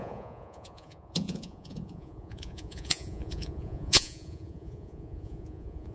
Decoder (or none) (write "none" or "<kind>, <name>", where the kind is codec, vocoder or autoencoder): vocoder, Vocos